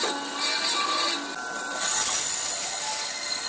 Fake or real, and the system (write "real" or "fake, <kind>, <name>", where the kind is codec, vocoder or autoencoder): real